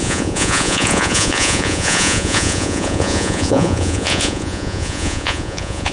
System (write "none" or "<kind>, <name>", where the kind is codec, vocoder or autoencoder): vocoder, Vocos